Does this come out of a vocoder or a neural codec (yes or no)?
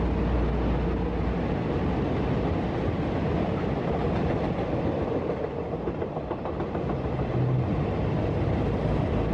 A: no